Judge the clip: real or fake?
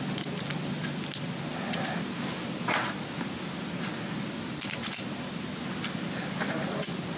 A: real